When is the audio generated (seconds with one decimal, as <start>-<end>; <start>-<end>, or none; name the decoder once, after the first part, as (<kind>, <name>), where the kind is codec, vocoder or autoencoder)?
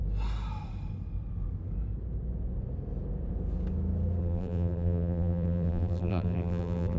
4.2-7.0 (vocoder, BigVGAN v2)